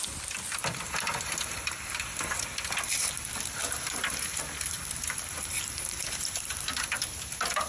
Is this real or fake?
fake